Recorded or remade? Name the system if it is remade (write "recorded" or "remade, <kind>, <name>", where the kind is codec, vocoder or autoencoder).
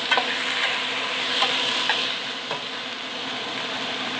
recorded